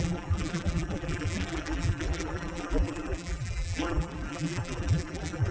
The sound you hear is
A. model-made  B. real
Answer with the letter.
A